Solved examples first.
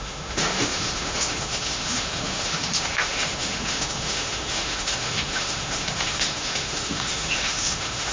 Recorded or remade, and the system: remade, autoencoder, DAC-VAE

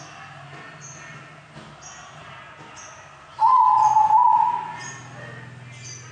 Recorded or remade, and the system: recorded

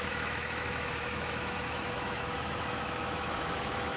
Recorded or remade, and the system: remade, autoencoder, DAC-VAE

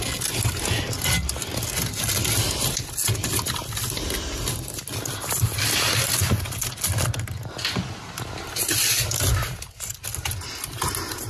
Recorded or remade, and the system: recorded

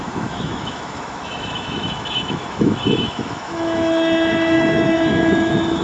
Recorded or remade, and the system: remade, autoencoder, DAC-VAE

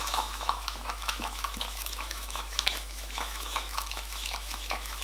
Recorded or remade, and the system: remade, autoencoder, DAC-VAE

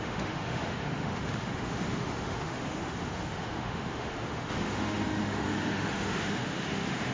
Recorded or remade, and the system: remade, autoencoder, DAC-VAE